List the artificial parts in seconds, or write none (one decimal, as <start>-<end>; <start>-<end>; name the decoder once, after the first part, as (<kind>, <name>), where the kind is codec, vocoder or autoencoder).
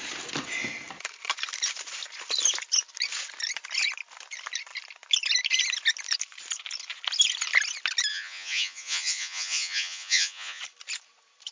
8.1-10.6 (vocoder, Vocos)